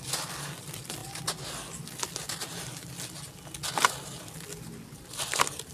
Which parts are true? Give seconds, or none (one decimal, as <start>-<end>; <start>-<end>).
0.0-5.7